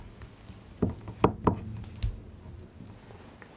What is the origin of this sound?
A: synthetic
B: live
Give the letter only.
B